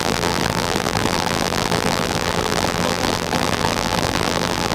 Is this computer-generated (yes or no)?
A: yes